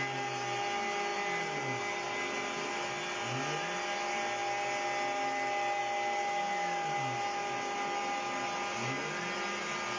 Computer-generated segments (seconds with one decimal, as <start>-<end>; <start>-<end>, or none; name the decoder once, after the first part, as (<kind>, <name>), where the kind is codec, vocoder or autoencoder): none